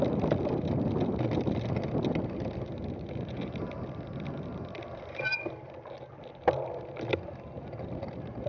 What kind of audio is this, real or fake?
real